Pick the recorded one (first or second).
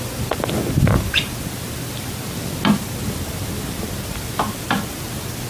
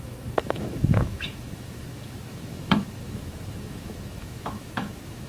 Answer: first